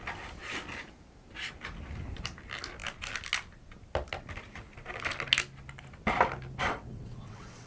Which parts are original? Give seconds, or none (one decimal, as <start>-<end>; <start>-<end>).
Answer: 0.0-6.6

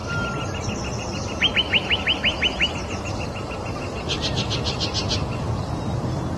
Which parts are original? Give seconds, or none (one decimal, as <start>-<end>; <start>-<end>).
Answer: 0.0-2.3

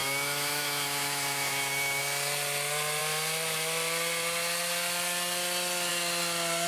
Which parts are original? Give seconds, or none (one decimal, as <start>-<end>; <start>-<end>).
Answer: 2.0-6.7

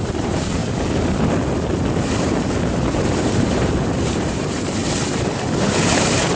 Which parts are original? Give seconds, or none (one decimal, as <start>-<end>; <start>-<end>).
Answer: 0.6-3.0; 4.8-5.7

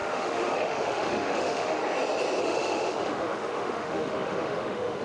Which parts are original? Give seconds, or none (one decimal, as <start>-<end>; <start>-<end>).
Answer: 1.8-2.4

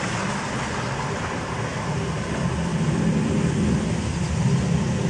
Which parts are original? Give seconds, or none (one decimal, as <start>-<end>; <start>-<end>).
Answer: 0.0-5.1

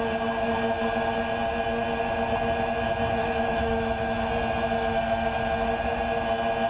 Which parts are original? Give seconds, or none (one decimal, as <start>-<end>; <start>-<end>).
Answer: 0.0-3.2; 4.3-6.7

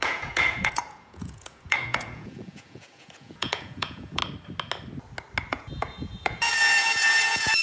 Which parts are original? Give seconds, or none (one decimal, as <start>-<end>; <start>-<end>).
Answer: 4.2-5.5